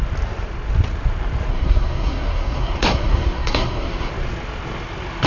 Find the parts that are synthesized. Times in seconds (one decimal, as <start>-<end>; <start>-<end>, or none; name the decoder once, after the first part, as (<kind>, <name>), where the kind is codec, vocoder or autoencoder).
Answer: 1.5-4.1 (codec, SNAC)